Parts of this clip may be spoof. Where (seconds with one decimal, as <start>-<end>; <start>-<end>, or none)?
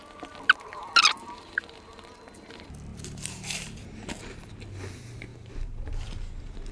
2.9-4.5; 5.3-6.1